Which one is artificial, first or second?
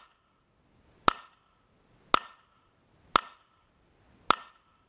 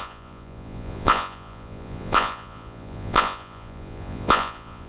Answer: second